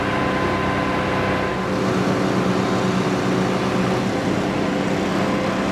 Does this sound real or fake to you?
real